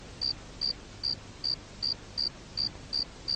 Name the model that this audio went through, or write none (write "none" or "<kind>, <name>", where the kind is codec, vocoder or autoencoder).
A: none